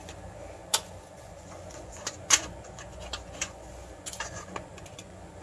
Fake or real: fake